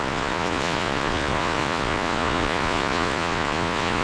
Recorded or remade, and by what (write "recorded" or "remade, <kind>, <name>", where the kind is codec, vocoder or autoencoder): remade, vocoder, Vocos